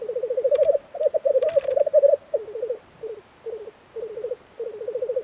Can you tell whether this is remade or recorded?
recorded